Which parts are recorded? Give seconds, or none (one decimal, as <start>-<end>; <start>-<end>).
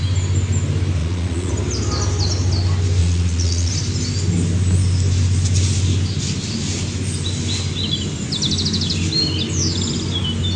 0.0-1.0; 1.5-3.0; 3.7-10.6